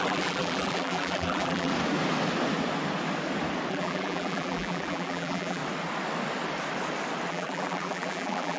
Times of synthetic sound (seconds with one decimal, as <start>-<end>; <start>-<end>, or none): 0.0-1.7; 3.7-5.6; 7.3-8.6